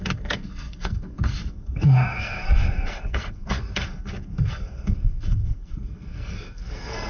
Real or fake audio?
fake